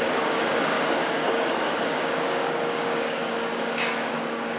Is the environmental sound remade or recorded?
remade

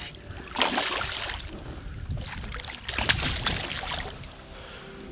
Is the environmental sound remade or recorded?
recorded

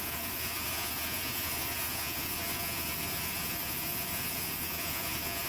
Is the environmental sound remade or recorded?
remade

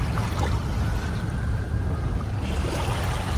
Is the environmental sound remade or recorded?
recorded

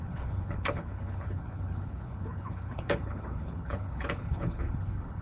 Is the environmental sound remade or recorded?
remade